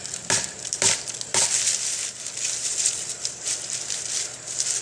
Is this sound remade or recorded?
recorded